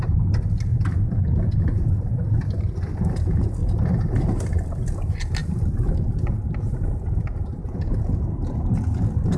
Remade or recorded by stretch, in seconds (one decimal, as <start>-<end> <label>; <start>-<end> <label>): 0.0-3.6 recorded; 3.6-4.9 remade; 4.9-5.4 recorded; 5.4-6.3 remade; 6.3-9.4 recorded